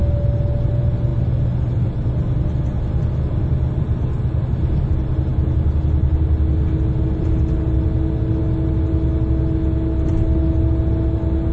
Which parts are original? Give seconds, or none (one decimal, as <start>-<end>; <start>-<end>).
0.0-11.5

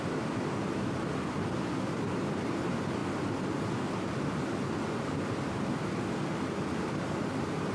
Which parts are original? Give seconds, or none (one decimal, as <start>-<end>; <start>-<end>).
0.0-7.7

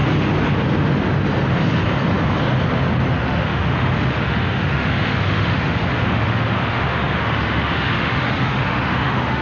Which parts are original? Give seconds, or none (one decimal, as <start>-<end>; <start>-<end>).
0.0-3.1

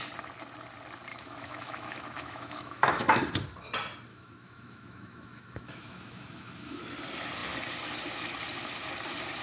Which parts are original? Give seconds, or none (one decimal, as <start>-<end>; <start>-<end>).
0.0-1.1; 3.2-4.1; 6.8-9.4

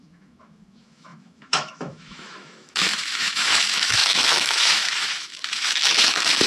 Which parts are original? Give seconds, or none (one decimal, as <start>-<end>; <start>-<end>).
none

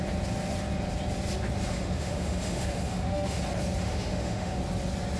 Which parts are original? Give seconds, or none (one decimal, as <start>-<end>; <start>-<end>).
0.0-1.7; 3.4-3.8; 4.6-5.2

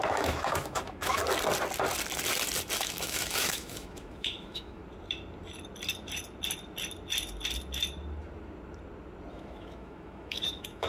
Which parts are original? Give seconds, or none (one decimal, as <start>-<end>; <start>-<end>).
1.2-2.8; 4.8-9.3